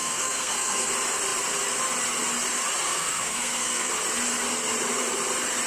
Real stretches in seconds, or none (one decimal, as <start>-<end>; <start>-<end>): 0.9-2.9; 3.9-5.7

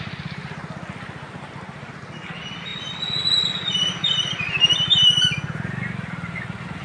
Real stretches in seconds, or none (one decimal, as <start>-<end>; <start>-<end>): 0.0-6.8

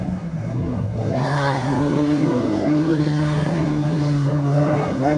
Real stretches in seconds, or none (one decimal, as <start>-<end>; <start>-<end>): none